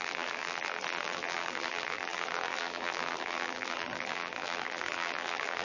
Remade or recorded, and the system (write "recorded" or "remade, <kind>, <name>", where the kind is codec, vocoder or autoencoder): remade, vocoder, BigVGAN v2